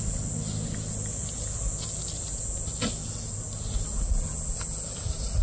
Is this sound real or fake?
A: real